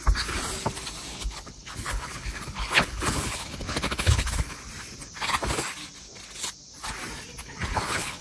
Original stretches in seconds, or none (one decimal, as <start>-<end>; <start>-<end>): 0.0-1.1; 4.6-7.4